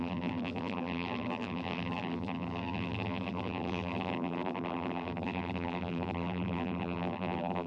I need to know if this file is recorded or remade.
remade